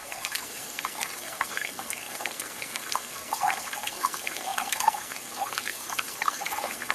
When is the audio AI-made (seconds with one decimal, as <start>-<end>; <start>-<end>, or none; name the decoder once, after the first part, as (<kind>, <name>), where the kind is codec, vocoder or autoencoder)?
0.0-6.9 (codec, SNAC)